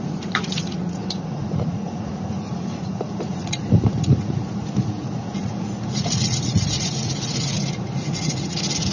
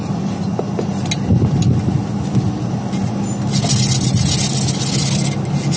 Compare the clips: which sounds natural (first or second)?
second